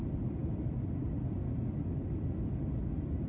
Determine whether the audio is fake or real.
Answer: fake